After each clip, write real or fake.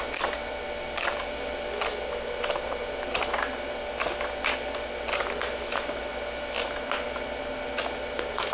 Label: real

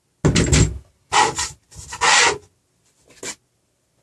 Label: real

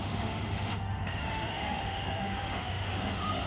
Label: fake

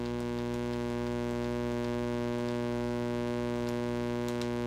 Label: real